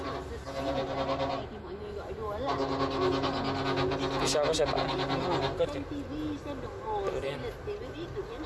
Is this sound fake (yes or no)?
no